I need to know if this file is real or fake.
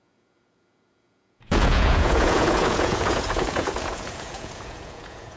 fake